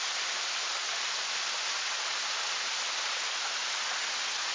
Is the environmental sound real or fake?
real